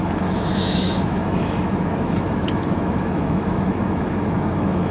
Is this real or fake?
fake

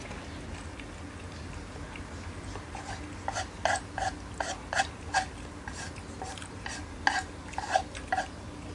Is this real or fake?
real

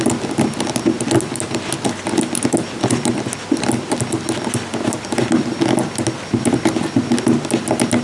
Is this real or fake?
real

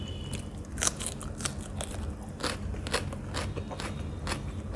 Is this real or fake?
real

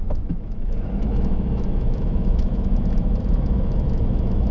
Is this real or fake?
fake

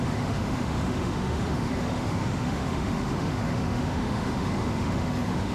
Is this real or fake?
fake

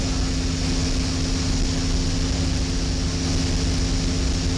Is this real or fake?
real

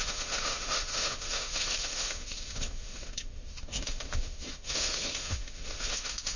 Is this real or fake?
fake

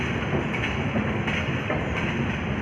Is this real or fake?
real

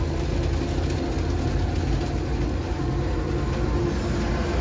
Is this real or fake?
real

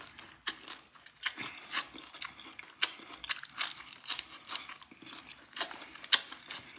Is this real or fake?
real